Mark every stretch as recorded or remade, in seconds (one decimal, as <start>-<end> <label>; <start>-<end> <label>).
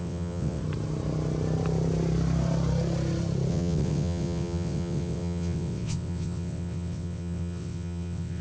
0.0-0.6 remade; 0.6-3.5 recorded; 3.5-8.4 remade